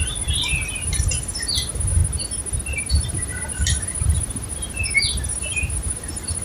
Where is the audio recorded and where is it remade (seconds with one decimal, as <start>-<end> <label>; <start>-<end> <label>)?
0.0-2.0 remade; 2.0-2.9 recorded; 2.9-4.8 remade; 4.8-5.4 recorded; 5.4-6.4 remade